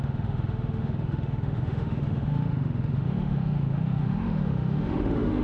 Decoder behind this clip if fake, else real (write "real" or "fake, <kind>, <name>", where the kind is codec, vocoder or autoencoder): fake, autoencoder, DAC-VAE